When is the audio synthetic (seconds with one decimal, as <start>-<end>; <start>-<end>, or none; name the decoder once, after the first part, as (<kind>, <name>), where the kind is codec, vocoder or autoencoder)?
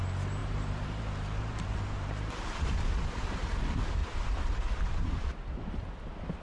0.4-3.6 (vocoder, BigVGAN v2); 4.0-5.6